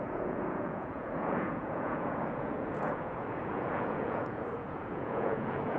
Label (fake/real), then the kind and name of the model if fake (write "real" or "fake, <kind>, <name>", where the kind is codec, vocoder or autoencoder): fake, vocoder, Vocos